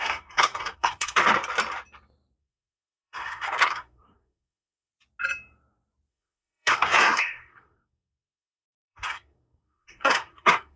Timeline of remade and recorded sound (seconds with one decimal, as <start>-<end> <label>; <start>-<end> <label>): 0.0-1.2 remade; 1.2-2.4 recorded; 2.4-4.9 remade; 4.9-6.1 recorded; 6.1-10.8 remade